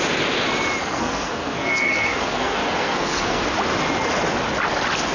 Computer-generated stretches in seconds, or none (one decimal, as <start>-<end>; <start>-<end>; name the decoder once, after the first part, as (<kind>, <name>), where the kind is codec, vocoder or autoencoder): 0.8-3.4 (codec, SNAC)